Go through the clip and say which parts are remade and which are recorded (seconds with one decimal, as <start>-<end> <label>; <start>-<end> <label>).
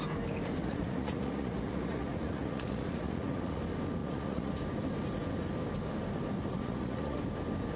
0.0-0.6 recorded; 0.6-3.6 remade; 3.6-4.0 recorded; 4.0-4.6 remade; 4.6-6.5 recorded; 6.5-7.2 remade; 7.2-7.8 recorded